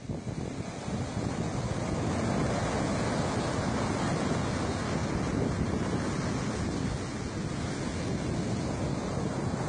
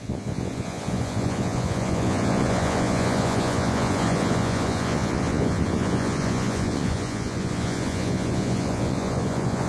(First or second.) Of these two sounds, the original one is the first